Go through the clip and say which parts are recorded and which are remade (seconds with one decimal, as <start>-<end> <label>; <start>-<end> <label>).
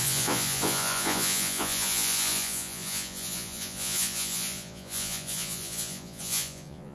0.0-6.9 remade